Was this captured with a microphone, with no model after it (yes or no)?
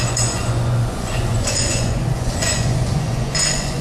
no